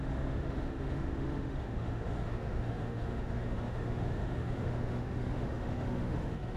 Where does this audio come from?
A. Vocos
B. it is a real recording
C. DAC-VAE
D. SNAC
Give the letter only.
C